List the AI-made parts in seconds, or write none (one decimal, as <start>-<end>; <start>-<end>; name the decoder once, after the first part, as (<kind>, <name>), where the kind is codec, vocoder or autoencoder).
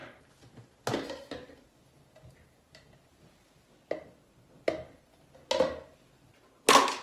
none